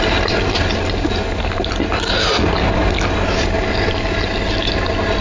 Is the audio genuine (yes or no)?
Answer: yes